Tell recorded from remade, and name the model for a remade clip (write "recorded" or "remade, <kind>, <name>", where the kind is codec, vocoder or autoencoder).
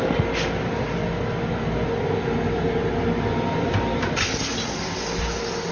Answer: recorded